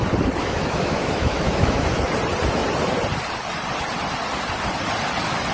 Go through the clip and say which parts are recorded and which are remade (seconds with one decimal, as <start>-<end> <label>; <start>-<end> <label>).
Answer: 0.0-0.4 recorded; 0.4-2.1 remade; 2.1-5.5 recorded